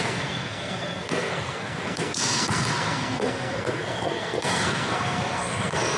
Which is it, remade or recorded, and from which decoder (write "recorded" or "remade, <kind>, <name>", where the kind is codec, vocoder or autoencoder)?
remade, codec, SNAC